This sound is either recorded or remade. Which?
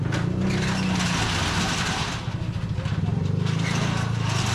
recorded